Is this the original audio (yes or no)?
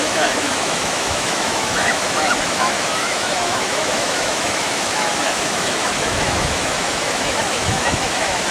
no